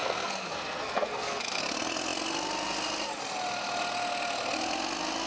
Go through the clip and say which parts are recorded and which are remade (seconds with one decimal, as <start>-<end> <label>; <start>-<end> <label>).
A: 0.0-1.6 remade; 1.6-5.3 recorded